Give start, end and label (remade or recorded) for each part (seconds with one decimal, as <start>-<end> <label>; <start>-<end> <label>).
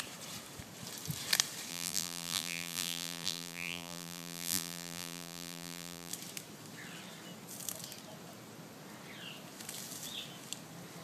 0.0-1.7 recorded; 1.7-6.1 remade; 6.1-11.0 recorded